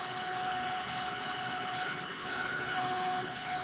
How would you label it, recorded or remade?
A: remade